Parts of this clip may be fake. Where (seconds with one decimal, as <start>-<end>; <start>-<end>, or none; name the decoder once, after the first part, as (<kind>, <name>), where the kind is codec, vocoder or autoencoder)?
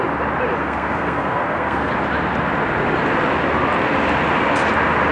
0.6-1.9 (codec, SNAC)